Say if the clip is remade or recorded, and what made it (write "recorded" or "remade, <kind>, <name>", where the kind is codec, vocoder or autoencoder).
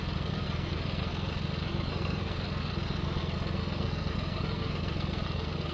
remade, codec, SNAC